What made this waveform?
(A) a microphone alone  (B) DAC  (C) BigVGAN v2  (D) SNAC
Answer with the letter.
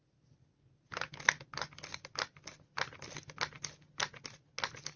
A